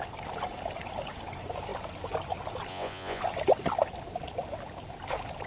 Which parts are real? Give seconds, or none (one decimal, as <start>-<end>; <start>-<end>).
0.0-2.7; 3.2-5.5

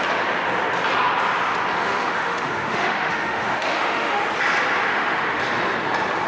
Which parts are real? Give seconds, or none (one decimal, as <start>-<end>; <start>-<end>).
0.0-1.8; 4.2-4.9; 5.4-6.3